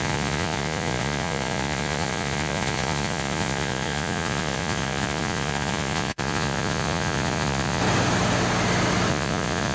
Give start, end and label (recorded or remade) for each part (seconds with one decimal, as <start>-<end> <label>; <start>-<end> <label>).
0.0-7.8 remade; 7.8-9.1 recorded; 9.1-9.7 remade